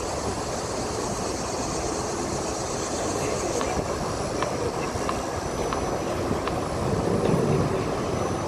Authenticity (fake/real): real